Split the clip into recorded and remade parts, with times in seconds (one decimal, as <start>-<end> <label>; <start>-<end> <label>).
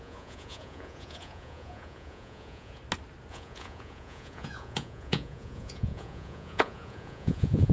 0.0-2.8 remade; 2.8-3.3 recorded; 3.3-7.7 remade